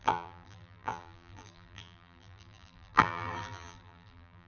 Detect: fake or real fake